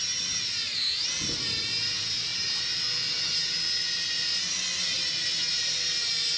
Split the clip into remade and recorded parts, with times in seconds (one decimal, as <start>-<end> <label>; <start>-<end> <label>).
0.0-6.4 recorded